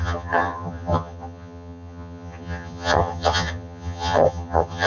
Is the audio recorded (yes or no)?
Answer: no